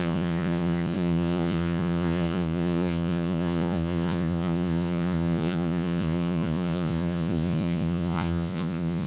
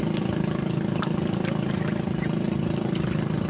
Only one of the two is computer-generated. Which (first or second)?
first